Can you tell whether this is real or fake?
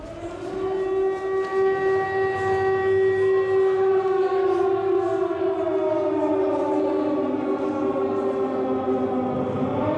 real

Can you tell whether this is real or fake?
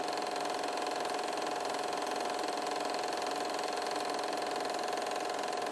fake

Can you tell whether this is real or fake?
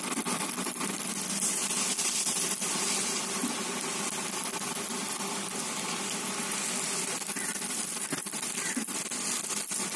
real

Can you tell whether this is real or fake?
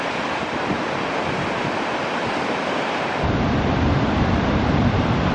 fake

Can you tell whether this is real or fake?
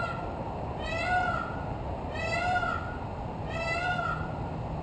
fake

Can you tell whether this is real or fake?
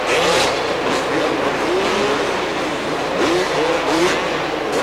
real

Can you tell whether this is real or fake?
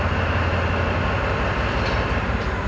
real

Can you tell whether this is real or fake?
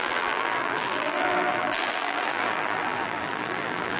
fake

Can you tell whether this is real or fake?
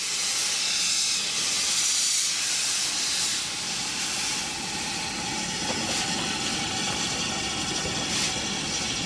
fake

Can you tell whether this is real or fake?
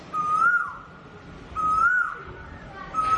real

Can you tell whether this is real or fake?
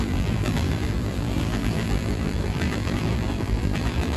fake